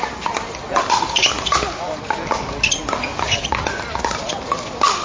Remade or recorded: recorded